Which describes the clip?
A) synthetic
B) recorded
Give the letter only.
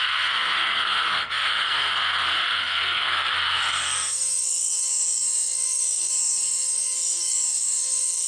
A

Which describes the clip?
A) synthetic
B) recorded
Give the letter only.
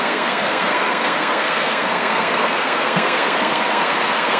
A